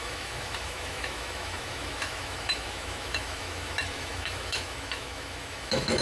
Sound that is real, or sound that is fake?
fake